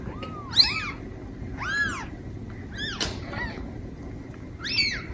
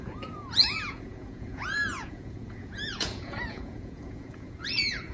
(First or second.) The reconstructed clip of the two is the second